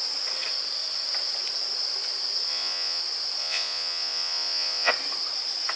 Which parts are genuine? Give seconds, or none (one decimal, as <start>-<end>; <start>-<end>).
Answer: 0.0-2.5; 3.0-3.4; 4.9-5.8